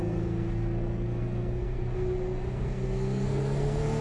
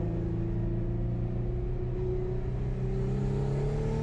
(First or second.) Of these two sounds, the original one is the second